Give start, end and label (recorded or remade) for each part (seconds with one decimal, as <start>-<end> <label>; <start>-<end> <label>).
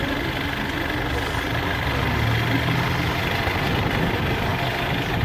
0.0-5.2 recorded